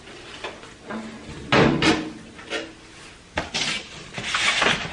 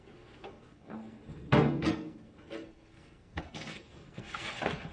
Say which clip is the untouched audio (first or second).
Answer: first